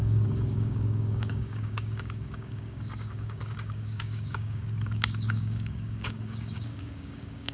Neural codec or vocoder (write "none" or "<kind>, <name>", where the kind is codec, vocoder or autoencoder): codec, DAC